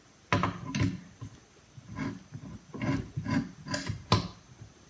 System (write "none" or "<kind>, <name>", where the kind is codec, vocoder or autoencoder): none